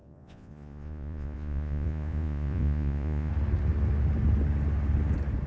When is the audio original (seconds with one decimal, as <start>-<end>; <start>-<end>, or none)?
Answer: 3.3-5.5